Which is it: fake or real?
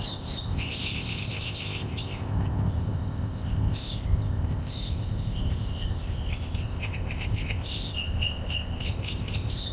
fake